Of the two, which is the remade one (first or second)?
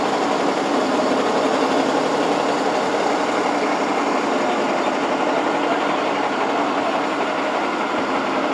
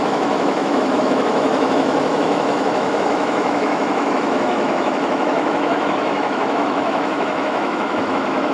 second